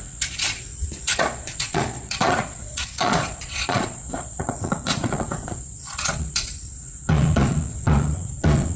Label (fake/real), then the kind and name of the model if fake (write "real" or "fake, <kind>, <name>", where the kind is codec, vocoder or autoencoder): fake, vocoder, Vocos